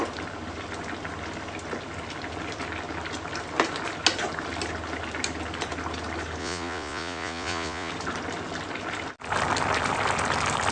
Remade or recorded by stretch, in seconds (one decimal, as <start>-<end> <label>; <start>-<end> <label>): 0.0-6.4 recorded; 6.4-7.9 remade; 7.9-10.7 recorded